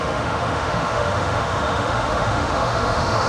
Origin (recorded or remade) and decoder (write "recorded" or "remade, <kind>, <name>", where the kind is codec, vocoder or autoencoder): remade, autoencoder, DAC-VAE